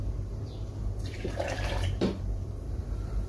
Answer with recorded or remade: remade